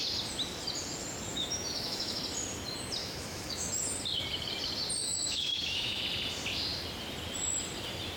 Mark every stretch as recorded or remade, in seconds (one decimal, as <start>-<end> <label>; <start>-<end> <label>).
0.0-1.3 recorded; 1.3-2.2 remade; 2.2-3.0 recorded; 3.0-3.7 remade; 3.7-5.0 recorded; 5.0-6.0 remade; 6.0-8.2 recorded